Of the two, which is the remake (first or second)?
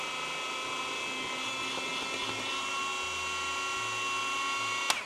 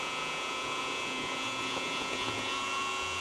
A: second